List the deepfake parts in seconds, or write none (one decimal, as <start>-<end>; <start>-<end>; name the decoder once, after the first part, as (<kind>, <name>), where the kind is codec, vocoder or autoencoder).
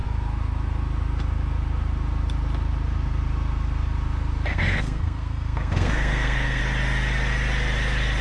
4.5-6.6 (codec, SNAC)